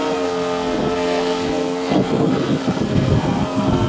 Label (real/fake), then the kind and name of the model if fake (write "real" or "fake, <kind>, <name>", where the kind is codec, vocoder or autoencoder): fake, codec, SNAC